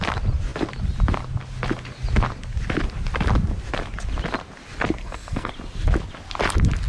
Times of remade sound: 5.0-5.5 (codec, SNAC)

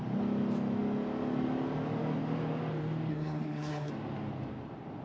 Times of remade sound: 3.1-3.9 (codec, SNAC)

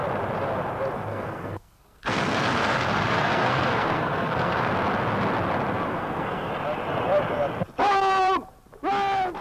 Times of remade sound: 1.1-4.7 (codec, SNAC); 5.9-6.5

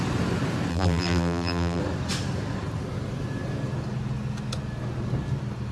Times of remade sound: 0.7-1.8 (vocoder, BigVGAN v2)

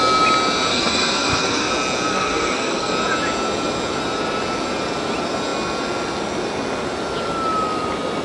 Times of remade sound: 0.7-1.7 (codec, SNAC); 2.1-2.9

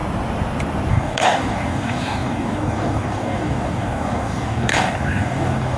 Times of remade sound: 0.9-5.8 (codec, DAC)